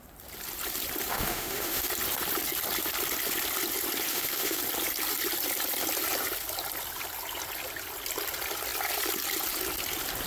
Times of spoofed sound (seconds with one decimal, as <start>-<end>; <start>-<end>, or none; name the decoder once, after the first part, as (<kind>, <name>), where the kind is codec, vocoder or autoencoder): 1.1-1.9 (autoencoder, DAC-VAE); 4.1-4.6